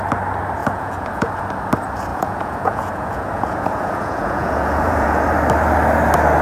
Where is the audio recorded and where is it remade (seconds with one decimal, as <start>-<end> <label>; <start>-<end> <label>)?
0.0-0.6 recorded; 0.6-1.3 remade; 1.3-2.1 recorded; 2.1-5.2 remade; 5.2-6.4 recorded